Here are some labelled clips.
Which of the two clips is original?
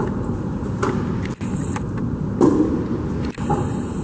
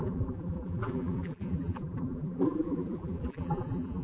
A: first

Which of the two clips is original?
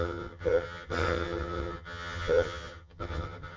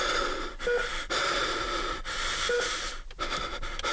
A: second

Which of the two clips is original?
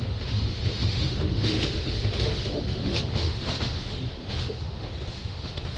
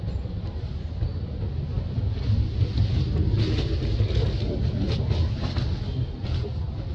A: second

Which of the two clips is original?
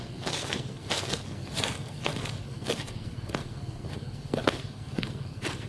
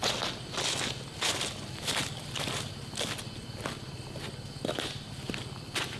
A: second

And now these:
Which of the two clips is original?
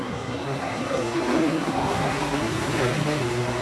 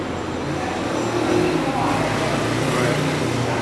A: second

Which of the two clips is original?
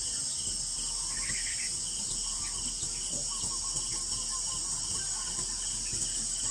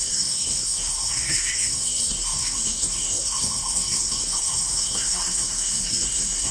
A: first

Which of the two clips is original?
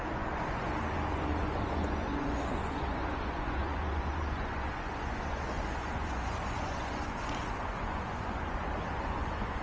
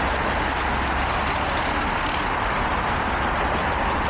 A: second